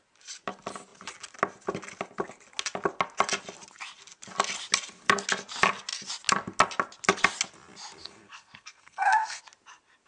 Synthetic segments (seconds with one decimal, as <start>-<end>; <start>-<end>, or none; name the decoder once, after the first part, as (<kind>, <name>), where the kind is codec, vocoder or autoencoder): 8.0-9.4 (codec, SNAC)